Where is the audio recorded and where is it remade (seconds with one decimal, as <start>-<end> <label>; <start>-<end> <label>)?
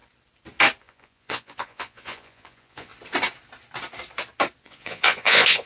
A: 0.0-0.8 recorded; 0.8-2.9 remade; 2.9-4.6 recorded; 4.6-5.7 remade